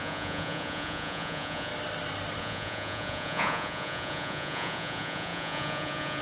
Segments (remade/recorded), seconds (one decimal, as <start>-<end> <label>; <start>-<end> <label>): 0.0-1.7 remade; 1.7-2.4 recorded; 2.4-6.2 remade